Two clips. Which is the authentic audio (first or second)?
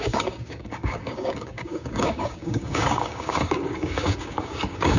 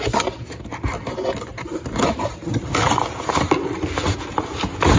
second